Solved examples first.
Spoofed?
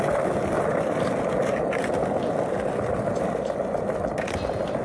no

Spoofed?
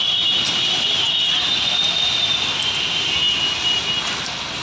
no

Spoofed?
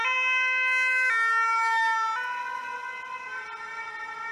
no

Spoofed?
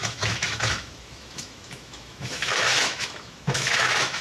yes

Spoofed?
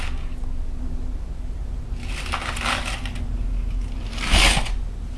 no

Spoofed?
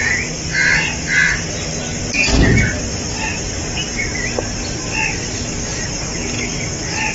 no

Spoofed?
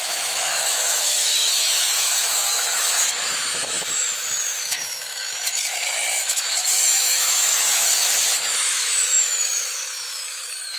yes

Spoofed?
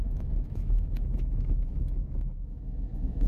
yes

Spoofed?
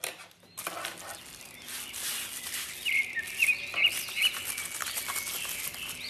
no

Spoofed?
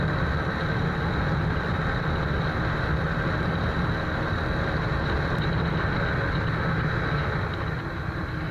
no